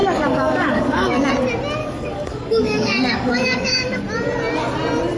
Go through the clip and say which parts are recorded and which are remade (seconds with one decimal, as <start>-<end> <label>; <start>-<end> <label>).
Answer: 0.0-1.3 remade; 1.3-1.8 recorded; 1.8-4.0 remade; 4.0-5.2 recorded